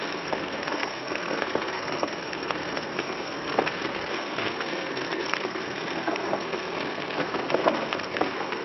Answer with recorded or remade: remade